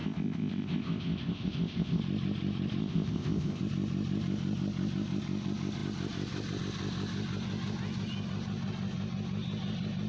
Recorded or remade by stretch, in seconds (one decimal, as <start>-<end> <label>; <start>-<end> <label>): 0.0-2.0 remade; 2.0-2.8 recorded; 2.8-3.6 remade; 3.6-10.1 recorded